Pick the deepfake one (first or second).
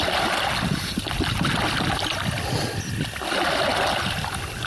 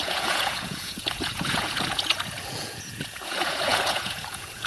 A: second